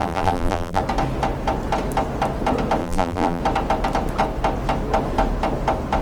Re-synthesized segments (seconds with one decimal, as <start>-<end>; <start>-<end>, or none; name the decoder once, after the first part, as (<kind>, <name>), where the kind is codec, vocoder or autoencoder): 0.0-0.8 (vocoder, BigVGAN v2); 2.8-3.4